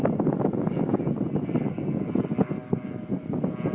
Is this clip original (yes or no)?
yes